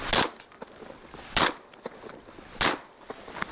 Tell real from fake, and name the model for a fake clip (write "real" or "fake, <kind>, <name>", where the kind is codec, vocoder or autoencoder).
real